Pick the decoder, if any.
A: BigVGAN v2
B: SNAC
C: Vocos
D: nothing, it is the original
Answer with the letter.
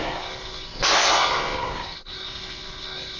B